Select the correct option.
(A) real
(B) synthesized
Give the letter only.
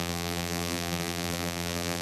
B